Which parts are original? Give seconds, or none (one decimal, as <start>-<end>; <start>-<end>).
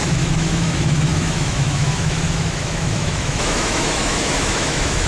none